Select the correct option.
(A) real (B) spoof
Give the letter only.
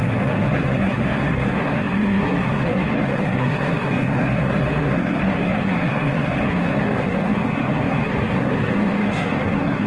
B